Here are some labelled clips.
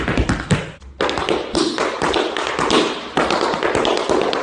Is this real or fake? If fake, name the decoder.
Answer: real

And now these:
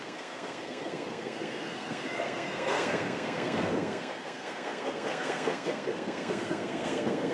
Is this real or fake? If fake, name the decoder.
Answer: fake, codec, SNAC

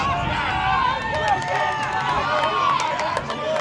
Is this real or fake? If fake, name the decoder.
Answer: real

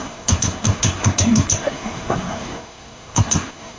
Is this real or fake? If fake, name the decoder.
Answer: fake, codec, SNAC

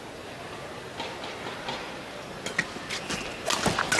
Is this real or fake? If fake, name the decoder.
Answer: real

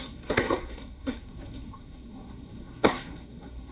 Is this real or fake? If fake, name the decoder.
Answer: fake, codec, SNAC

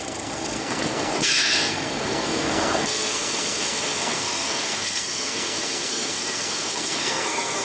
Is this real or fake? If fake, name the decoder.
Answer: fake, codec, SNAC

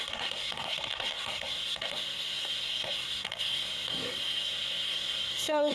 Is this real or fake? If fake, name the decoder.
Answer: fake, codec, SNAC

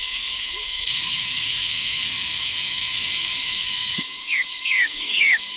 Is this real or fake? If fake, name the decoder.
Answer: fake, codec, SNAC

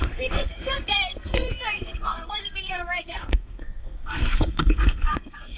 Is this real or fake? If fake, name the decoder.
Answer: fake, codec, SNAC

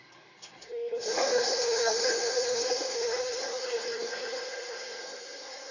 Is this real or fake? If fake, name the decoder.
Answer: fake, codec, SNAC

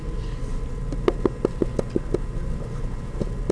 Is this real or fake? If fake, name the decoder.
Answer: real